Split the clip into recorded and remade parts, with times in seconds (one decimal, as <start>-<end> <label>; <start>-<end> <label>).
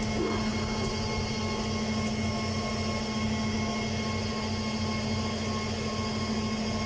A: 0.0-6.9 recorded